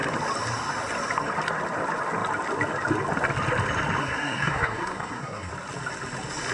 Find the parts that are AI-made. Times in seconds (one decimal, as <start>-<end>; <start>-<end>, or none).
4.0-5.5